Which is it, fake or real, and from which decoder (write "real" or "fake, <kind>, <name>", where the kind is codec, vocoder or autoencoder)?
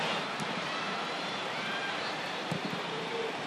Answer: fake, vocoder, BigVGAN v2